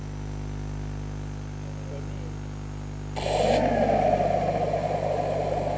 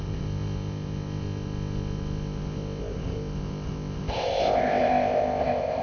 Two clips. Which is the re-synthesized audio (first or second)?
second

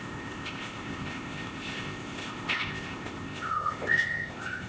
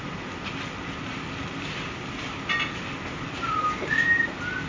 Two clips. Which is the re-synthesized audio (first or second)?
first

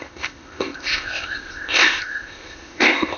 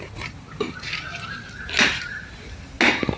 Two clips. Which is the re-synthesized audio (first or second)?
first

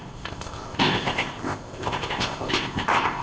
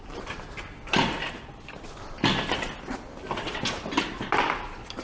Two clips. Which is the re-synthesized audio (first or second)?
first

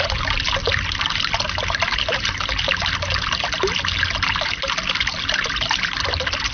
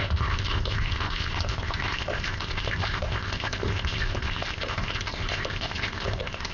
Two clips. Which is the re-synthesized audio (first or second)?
second